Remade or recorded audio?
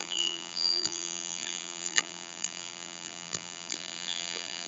remade